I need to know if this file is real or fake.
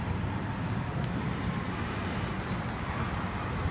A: real